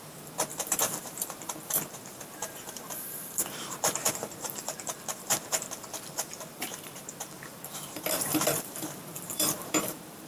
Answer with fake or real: fake